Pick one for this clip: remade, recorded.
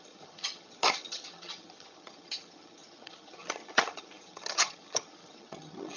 remade